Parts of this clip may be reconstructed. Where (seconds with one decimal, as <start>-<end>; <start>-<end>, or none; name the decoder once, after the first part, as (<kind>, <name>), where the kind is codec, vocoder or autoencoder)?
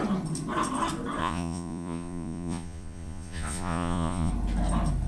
1.2-4.3 (vocoder, Vocos)